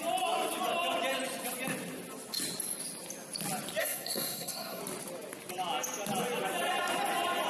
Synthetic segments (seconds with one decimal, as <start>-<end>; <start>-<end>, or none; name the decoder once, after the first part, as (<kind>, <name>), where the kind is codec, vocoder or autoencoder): 3.8-4.8 (codec, SNAC)